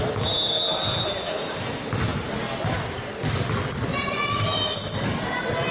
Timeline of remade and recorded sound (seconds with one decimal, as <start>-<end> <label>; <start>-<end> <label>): 0.0-5.7 recorded